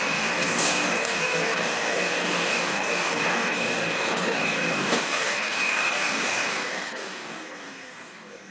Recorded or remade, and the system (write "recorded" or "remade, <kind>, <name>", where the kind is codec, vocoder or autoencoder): remade, codec, DAC